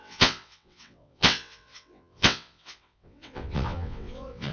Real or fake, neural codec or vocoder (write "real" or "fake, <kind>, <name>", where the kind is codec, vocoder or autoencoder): fake, vocoder, WaveNeXt